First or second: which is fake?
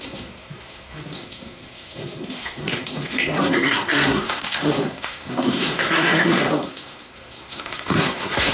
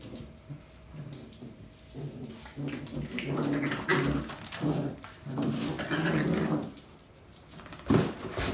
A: first